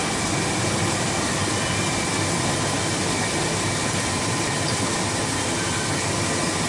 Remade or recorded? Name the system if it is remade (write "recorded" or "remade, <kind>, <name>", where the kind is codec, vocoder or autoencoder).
recorded